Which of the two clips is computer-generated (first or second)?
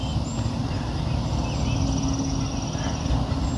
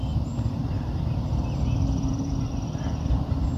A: second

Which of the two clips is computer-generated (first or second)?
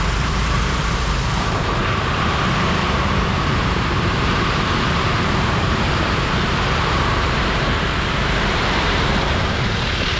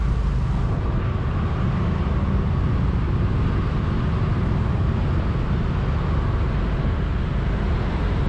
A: first